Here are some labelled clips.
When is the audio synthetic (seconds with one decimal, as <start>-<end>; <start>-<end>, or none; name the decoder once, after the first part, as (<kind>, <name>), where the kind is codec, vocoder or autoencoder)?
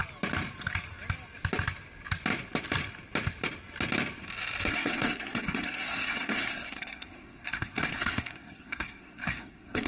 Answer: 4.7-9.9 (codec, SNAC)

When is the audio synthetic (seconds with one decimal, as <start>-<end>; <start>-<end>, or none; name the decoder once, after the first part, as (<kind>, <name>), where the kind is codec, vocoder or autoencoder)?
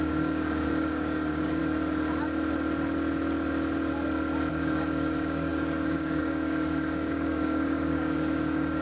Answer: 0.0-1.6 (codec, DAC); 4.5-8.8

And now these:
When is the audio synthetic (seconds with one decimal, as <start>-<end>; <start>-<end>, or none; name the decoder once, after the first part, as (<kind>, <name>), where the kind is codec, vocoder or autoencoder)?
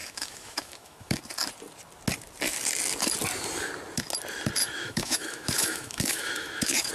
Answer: 0.0-1.2 (autoencoder, DAC-VAE); 4.6-6.9